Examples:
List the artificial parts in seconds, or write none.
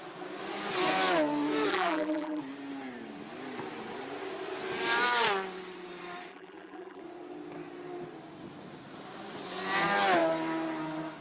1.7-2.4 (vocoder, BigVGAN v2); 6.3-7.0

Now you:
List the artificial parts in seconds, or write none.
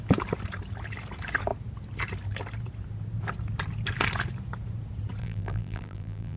5.2-6.4 (vocoder, BigVGAN v2)